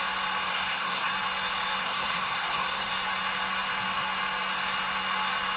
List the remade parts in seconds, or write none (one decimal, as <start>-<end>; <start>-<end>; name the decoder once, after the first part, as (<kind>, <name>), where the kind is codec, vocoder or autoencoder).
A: 0.5-1.1 (codec, SNAC); 1.8-2.9